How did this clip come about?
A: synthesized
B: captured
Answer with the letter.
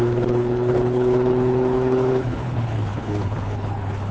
A